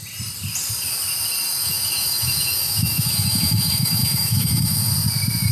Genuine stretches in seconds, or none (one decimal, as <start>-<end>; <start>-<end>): 0.0-1.6; 4.9-5.5